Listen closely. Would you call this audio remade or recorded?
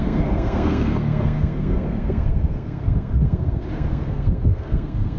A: remade